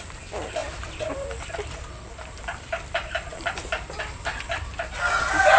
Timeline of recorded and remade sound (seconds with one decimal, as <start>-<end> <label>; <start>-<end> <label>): 0.0-0.6 recorded; 0.6-4.0 remade; 4.0-5.6 recorded